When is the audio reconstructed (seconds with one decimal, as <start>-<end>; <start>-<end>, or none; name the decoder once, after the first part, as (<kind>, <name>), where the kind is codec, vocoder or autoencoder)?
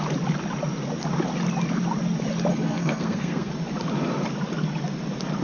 2.5-3.5 (codec, SNAC)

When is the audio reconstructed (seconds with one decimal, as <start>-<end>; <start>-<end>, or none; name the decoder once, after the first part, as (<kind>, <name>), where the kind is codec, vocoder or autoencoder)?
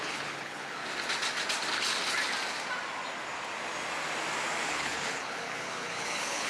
0.0-0.8 (codec, HILCodec); 4.7-6.5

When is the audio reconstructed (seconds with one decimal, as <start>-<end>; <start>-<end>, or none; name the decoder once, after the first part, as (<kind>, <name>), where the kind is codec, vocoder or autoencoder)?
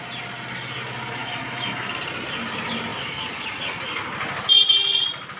1.2-1.9 (autoencoder, DAC-VAE)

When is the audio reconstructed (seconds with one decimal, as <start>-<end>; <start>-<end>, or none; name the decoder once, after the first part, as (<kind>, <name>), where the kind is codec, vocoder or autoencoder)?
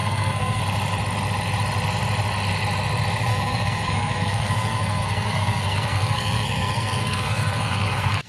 0.0-0.6 (codec, SNAC); 3.3-8.3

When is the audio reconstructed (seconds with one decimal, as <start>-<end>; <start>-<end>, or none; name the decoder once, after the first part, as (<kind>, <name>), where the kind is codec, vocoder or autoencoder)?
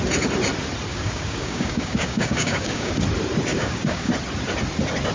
0.9-2.9 (codec, DAC); 3.5-4.1